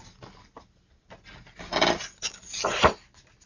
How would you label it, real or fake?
real